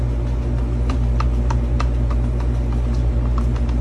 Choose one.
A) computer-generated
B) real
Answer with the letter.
B